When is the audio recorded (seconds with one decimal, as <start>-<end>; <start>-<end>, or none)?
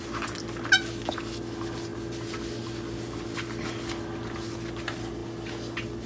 0.0-6.1